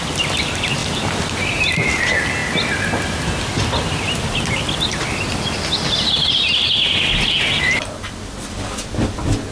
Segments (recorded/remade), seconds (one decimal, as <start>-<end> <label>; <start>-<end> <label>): 0.0-9.5 recorded